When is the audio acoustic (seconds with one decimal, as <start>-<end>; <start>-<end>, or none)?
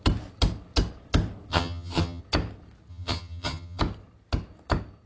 0.0-1.5; 2.2-2.9; 3.8-5.1